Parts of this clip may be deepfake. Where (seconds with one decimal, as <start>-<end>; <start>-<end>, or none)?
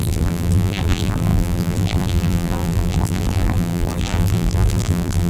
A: 0.0-5.3